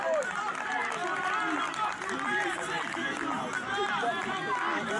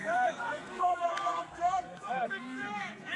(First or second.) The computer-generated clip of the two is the second